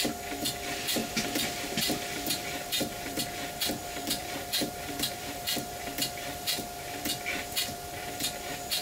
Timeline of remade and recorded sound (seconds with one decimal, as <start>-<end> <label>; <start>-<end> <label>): 0.0-1.0 recorded; 1.0-3.2 remade; 3.2-3.8 recorded; 3.8-8.8 remade